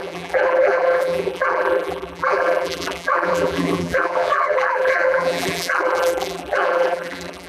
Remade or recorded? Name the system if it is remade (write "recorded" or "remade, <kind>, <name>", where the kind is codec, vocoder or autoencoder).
remade, vocoder, BigVGAN v2